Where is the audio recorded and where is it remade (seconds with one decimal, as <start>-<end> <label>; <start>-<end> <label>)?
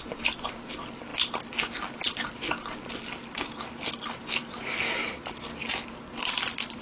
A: 0.0-6.8 recorded